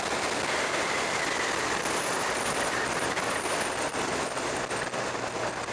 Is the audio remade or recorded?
recorded